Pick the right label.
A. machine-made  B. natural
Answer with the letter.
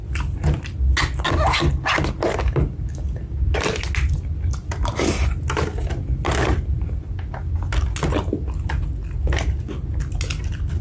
B